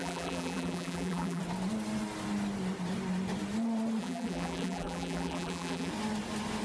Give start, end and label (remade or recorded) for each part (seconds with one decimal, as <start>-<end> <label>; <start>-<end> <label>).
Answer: 0.0-1.4 remade; 1.4-4.0 recorded; 4.0-5.9 remade; 5.9-6.6 recorded